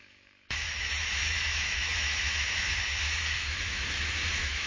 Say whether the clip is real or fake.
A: fake